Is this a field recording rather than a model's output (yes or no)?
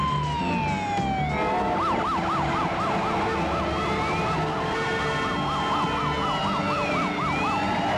yes